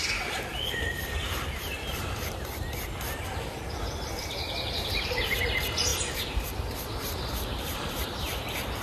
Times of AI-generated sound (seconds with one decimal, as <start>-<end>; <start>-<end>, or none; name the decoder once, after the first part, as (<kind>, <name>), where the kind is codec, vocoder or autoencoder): 0.0-8.8 (vocoder, BigVGAN v2)